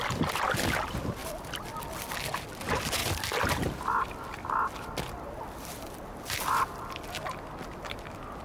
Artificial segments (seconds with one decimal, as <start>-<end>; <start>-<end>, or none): 1.2-1.9; 3.0-8.0